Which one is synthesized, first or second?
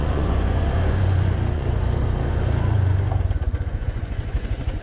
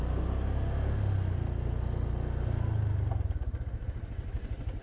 first